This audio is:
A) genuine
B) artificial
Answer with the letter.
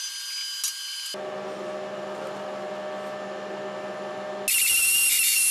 A